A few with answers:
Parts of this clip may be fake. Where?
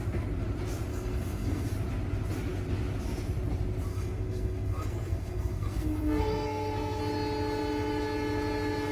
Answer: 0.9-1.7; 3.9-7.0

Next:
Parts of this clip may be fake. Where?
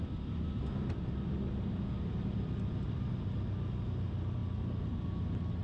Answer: none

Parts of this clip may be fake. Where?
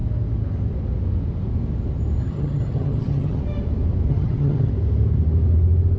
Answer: 2.2-3.4; 4.1-4.7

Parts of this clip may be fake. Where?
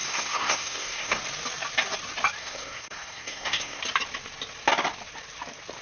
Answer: 0.0-1.2; 2.4-3.8